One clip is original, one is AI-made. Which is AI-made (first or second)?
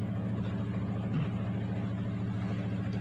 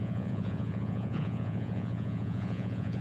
second